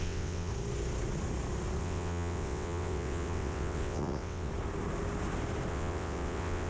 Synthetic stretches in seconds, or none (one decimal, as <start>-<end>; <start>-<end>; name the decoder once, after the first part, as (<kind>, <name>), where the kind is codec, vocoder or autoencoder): 0.0-0.5 (vocoder, WaveNeXt); 1.8-4.5; 5.7-6.7